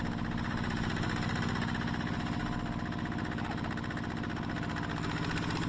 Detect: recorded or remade recorded